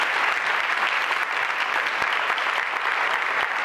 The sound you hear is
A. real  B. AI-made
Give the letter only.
A